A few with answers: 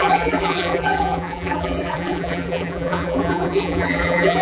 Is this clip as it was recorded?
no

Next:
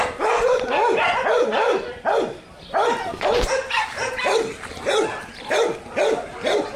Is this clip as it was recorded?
yes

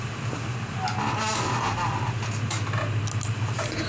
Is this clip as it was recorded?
yes